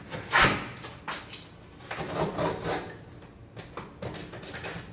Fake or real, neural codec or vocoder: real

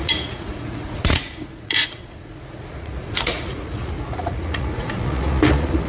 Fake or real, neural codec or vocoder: fake, vocoder, Vocos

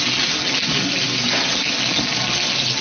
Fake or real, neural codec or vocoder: real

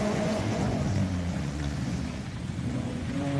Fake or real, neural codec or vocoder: fake, vocoder, Vocos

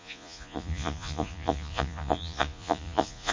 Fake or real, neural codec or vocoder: fake, vocoder, Vocos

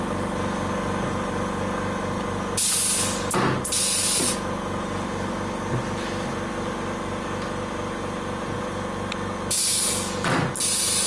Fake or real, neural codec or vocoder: real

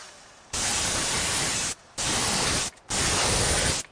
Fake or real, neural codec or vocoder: real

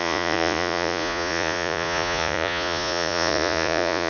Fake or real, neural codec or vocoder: fake, vocoder, Vocos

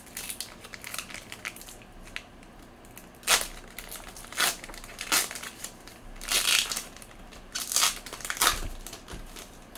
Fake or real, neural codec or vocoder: real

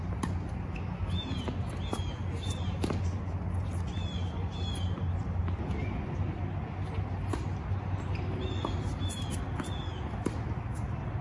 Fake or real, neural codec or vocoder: real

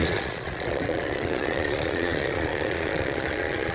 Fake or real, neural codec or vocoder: fake, vocoder, Vocos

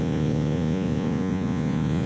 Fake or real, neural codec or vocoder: fake, vocoder, Vocos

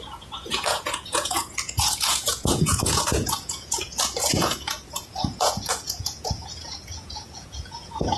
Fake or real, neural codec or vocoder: fake, vocoder, Vocos